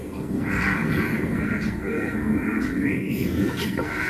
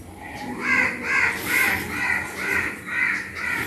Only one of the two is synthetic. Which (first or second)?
first